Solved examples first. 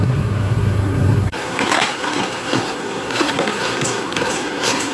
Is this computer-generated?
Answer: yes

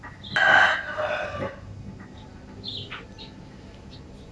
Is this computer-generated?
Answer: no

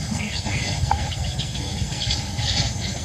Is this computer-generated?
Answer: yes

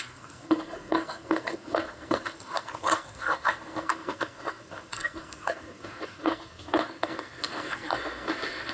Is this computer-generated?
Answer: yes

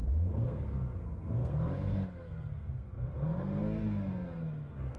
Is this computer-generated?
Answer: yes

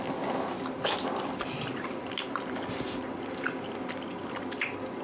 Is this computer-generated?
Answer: no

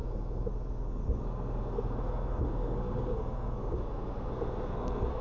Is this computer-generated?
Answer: yes